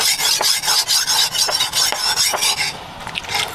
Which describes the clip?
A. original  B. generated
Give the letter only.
A